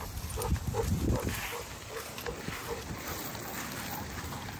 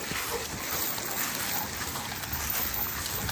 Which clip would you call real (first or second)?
second